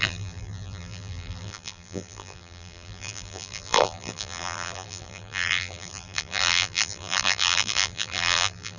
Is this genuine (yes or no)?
no